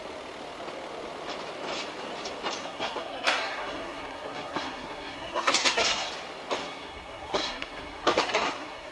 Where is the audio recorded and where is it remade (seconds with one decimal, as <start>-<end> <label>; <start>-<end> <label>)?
0.0-2.6 recorded; 2.6-6.1 remade; 6.1-6.6 recorded; 6.6-8.9 remade